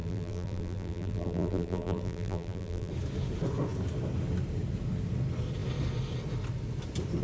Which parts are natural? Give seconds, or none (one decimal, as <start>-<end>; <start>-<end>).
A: 2.9-7.2